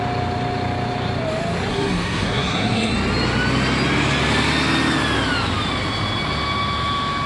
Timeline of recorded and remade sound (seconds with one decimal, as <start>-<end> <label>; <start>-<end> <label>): 0.0-1.7 recorded; 1.7-2.9 remade; 2.9-7.3 recorded